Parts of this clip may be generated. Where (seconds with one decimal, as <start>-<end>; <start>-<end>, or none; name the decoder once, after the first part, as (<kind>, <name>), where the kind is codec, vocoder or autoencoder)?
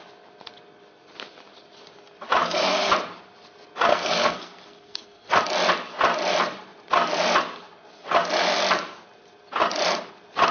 2.4-2.9 (codec, SNAC); 3.9-5.4